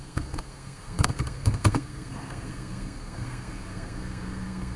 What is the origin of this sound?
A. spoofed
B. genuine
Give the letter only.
A